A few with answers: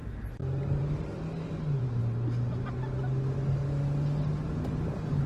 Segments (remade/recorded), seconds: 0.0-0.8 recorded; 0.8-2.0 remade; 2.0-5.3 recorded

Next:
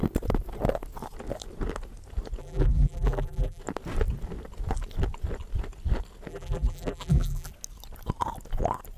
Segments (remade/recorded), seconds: 0.0-2.4 recorded; 2.4-3.6 remade; 3.6-6.3 recorded; 6.3-7.5 remade; 7.5-9.0 recorded

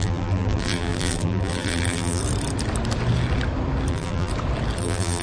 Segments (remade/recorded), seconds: 0.0-2.2 remade; 2.2-3.9 recorded; 3.9-4.3 remade; 4.3-4.8 recorded; 4.8-5.2 remade

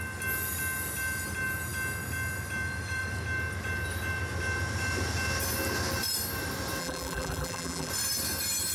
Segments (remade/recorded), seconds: 0.0-6.8 recorded; 6.8-7.9 remade; 7.9-8.7 recorded

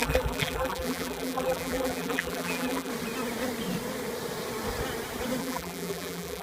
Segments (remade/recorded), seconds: 0.0-2.9 remade; 2.9-5.4 recorded; 5.4-6.4 remade